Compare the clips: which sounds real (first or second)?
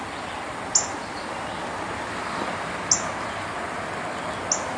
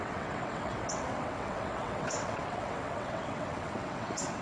first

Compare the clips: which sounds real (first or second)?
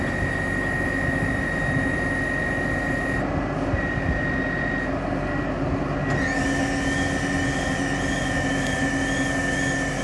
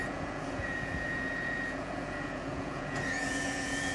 first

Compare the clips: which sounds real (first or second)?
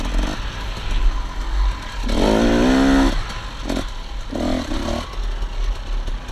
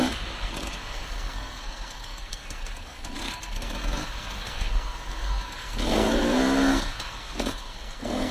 first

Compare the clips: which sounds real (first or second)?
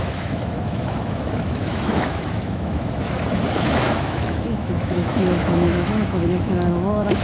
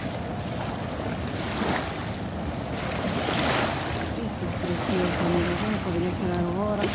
second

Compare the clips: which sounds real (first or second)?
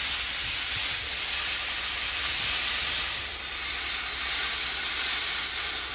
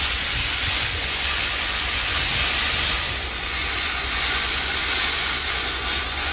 first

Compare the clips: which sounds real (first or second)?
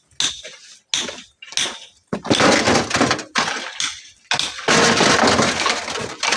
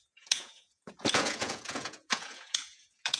first